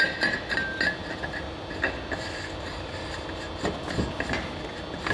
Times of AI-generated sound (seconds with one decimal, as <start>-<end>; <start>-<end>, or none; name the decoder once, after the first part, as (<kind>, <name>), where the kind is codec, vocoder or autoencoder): none

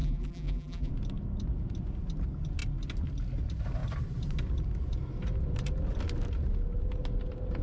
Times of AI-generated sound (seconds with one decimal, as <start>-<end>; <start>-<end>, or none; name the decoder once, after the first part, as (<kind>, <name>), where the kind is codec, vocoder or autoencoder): 0.0-0.9 (vocoder, BigVGAN v2)